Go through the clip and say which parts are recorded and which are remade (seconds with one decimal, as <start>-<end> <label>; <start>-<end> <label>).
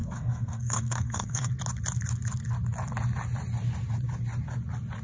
0.0-1.5 remade; 1.5-5.0 recorded